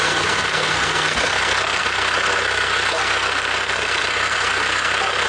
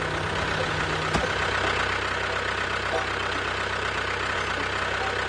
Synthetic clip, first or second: first